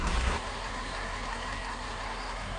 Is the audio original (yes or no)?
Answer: no